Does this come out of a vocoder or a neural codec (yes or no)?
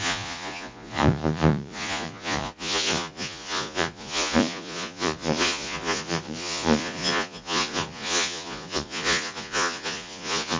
yes